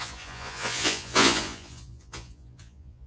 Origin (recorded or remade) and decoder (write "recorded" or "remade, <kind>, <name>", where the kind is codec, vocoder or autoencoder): remade, vocoder, Vocos